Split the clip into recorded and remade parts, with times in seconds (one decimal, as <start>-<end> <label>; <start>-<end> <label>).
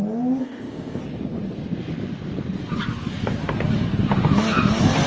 0.0-0.4 recorded; 0.4-1.0 remade; 1.0-5.1 recorded